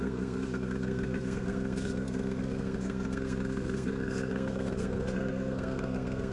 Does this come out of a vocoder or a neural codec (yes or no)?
yes